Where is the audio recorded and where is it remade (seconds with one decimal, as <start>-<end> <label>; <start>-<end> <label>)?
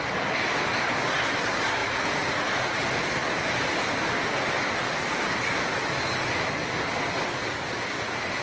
0.0-1.8 recorded; 1.8-2.8 remade; 2.8-8.4 recorded